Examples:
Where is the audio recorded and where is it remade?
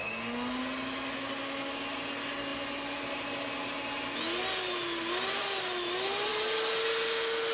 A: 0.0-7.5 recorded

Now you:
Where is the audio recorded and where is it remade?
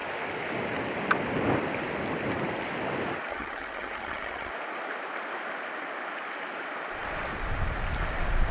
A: 0.0-3.3 recorded; 3.3-4.5 remade; 4.5-8.5 recorded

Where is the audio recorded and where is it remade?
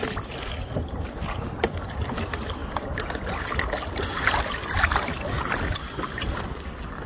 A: 0.0-7.1 recorded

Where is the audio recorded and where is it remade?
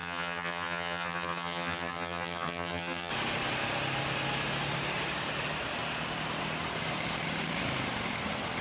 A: 0.0-3.1 remade; 3.1-8.6 recorded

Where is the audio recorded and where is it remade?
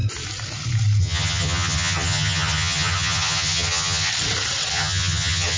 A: 0.0-1.0 recorded; 1.0-4.1 remade; 4.1-4.7 recorded; 4.7-5.6 remade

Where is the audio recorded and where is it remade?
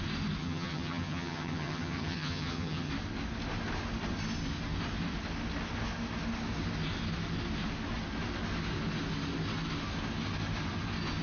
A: 0.0-0.4 recorded; 0.4-2.9 remade; 2.9-11.2 recorded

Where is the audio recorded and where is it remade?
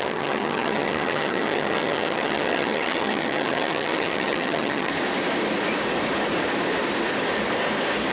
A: 0.0-4.9 remade; 4.9-8.1 recorded